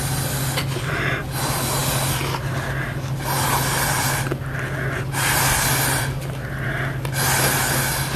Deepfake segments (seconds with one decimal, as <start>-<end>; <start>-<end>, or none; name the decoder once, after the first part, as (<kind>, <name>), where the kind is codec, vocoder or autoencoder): none